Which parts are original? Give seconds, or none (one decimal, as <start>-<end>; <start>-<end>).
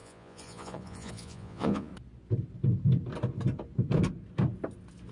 1.9-5.1